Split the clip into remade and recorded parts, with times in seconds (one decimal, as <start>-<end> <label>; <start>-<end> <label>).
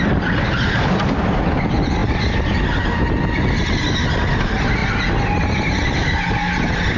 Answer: 0.0-7.0 recorded